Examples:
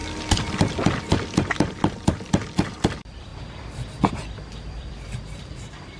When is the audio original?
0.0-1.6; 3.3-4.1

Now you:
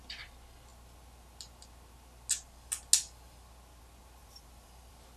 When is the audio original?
0.0-4.2

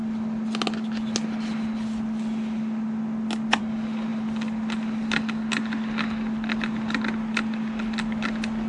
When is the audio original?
0.0-8.7